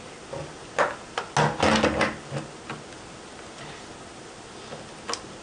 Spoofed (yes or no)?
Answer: no